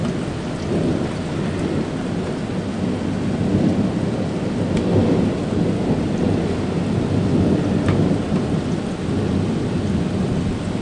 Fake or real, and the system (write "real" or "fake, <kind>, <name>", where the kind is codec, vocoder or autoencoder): real